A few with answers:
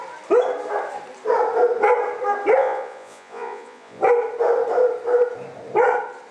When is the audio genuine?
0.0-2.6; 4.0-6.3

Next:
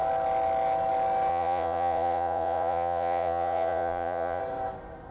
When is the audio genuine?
0.0-1.3; 4.4-5.1

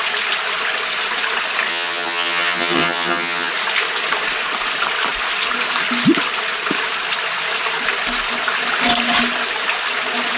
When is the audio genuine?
0.0-1.7; 3.5-10.4

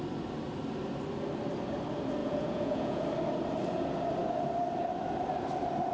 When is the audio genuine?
0.0-2.2; 3.0-5.9

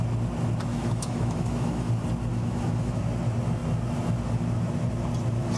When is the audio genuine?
0.0-0.7; 1.9-2.3; 3.0-5.6

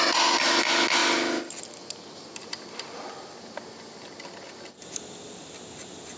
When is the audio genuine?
0.0-6.2

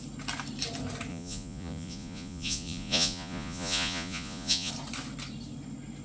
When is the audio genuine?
0.0-1.1; 4.7-6.0